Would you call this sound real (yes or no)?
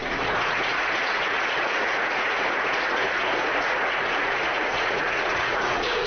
no